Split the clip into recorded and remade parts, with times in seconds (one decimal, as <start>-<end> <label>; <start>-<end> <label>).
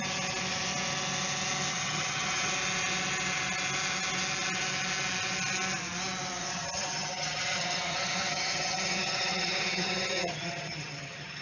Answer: 0.0-1.7 recorded; 1.7-2.5 remade; 2.5-6.5 recorded; 6.5-11.4 remade